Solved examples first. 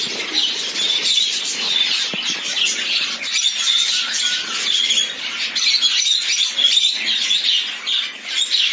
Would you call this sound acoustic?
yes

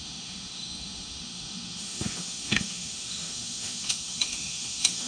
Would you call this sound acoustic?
no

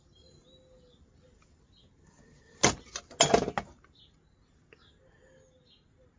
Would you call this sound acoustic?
yes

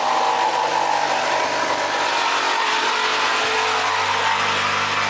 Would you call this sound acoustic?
yes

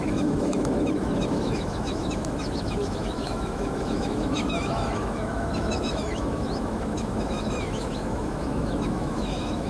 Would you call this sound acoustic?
no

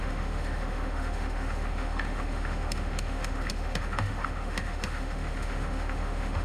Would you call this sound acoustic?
no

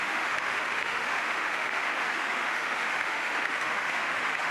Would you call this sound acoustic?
no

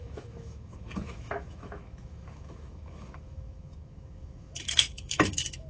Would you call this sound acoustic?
no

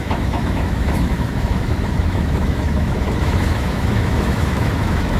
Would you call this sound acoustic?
no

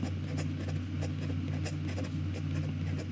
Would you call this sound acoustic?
yes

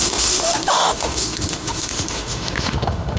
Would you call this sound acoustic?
no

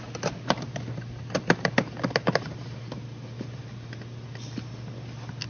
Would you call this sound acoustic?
yes